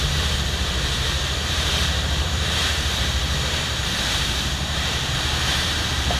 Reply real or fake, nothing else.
fake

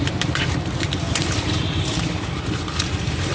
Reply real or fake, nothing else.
real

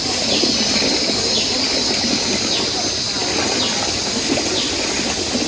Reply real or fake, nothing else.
real